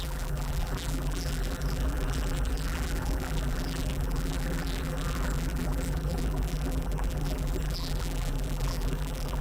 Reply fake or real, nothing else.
fake